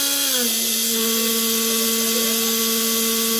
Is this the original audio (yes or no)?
yes